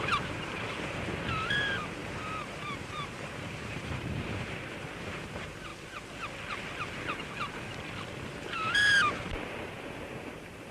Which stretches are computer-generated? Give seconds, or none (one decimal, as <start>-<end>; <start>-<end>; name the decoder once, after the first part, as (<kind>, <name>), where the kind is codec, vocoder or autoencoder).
0.0-5.7 (vocoder, BigVGAN v2); 8.3-10.7